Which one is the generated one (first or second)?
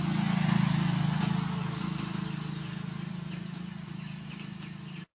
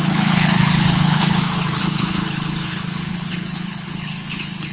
second